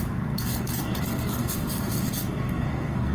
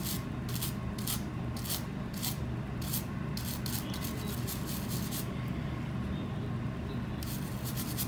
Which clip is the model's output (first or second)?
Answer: first